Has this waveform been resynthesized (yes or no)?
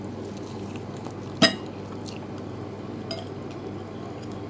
no